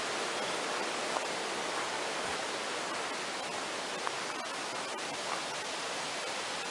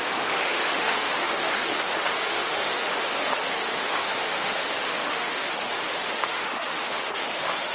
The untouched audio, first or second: first